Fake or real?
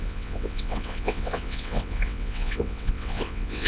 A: fake